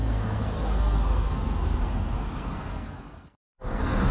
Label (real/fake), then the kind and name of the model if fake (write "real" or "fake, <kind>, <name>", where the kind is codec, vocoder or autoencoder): fake, codec, SNAC